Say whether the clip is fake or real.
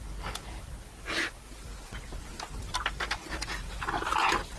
real